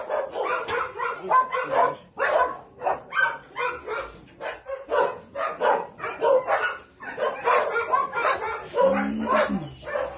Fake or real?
real